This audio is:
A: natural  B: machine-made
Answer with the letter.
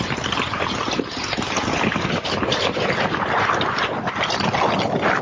A